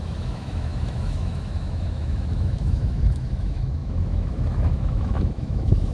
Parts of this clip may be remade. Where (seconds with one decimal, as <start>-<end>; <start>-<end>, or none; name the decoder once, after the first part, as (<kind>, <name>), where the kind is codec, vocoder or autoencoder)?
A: 0.0-5.9 (autoencoder, DAC-VAE)